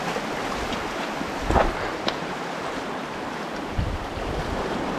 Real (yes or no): yes